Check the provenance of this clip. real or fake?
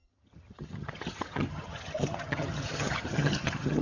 fake